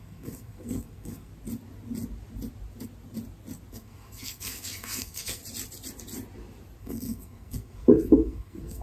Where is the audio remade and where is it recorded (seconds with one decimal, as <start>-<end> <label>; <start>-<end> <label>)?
0.0-1.3 remade; 1.3-3.7 recorded; 3.7-5.4 remade; 5.4-6.8 recorded; 6.8-8.8 remade